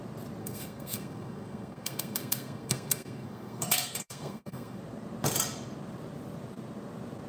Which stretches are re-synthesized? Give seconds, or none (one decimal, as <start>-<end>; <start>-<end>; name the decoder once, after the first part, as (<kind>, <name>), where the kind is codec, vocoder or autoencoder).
0.4-4.8 (codec, SNAC)